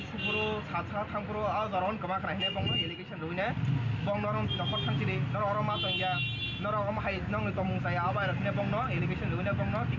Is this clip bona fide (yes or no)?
yes